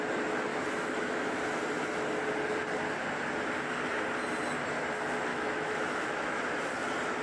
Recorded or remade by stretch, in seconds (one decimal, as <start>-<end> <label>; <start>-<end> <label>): 0.0-0.5 recorded; 0.5-1.4 remade; 1.4-5.3 recorded; 5.3-6.4 remade; 6.4-7.2 recorded